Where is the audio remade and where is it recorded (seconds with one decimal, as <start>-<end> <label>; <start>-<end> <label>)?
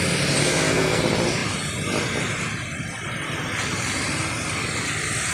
0.0-0.4 recorded; 0.4-1.0 remade; 1.0-5.3 recorded